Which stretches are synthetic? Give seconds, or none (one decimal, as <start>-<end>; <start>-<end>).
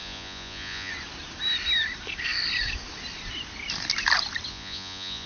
0.0-0.9; 4.5-5.3